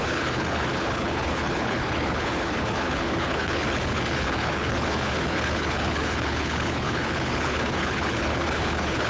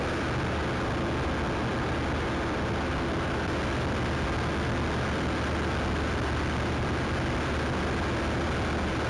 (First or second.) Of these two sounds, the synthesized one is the first